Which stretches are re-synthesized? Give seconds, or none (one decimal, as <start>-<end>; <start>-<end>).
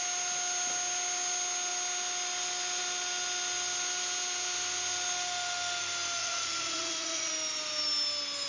6.2-7.3